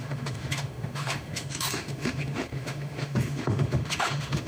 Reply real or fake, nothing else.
fake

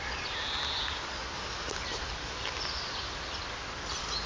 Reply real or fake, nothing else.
real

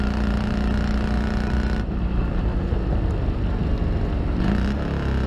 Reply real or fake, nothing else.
real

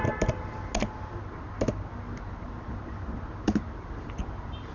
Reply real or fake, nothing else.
real